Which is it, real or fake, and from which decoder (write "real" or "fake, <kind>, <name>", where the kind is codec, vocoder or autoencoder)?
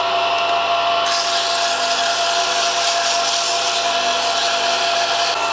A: real